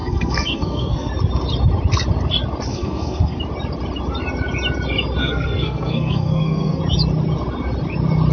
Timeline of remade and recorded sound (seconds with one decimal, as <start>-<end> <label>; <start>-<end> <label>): 0.0-1.1 remade; 1.1-2.7 recorded; 2.7-3.4 remade; 3.4-5.2 recorded; 5.2-6.8 remade; 6.8-8.3 recorded